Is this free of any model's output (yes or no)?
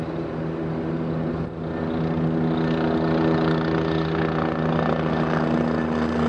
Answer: yes